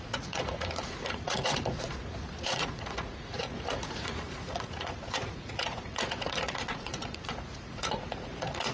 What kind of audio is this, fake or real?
fake